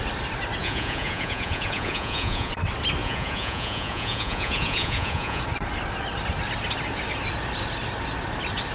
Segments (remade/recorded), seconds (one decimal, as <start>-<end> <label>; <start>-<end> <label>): 0.0-0.6 recorded; 0.6-2.5 remade; 2.5-3.0 recorded; 3.0-5.4 remade; 5.4-8.7 recorded

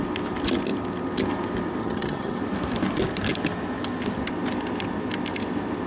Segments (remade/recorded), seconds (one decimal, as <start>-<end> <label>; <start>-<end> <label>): 0.0-1.8 recorded; 1.8-2.4 remade; 2.4-5.9 recorded